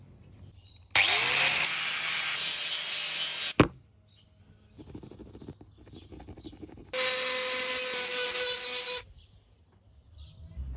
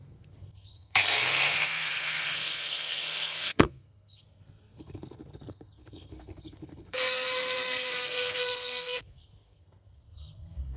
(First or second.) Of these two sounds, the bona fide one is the first